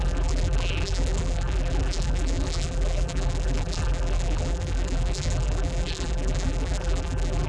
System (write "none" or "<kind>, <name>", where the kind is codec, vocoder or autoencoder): vocoder, BigVGAN v2